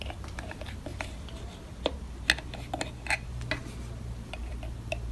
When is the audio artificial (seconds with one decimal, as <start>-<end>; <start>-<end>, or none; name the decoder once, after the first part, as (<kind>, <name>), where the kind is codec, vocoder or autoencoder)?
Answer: 0.0-0.9 (vocoder, BigVGAN v2); 4.0-5.1